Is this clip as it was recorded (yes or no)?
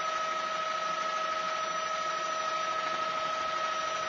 yes